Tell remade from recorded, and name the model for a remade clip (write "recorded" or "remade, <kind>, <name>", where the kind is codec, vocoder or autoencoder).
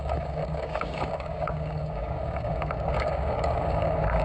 remade, codec, DAC